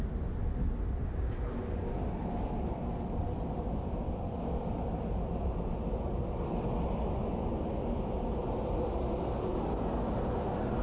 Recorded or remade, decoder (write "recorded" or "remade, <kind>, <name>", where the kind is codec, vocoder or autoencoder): recorded